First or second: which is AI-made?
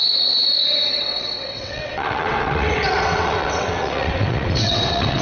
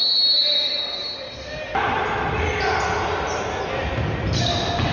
first